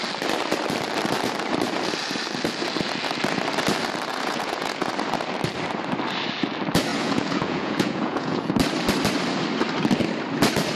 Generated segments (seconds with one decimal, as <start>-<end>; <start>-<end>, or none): 4.1-4.9; 6.9-8.5